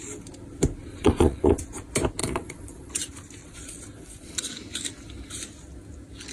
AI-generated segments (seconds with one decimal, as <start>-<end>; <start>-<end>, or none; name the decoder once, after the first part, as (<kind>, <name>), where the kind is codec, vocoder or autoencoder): 0.9-1.6 (vocoder, Vocos); 2.2-2.9; 3.4-4.5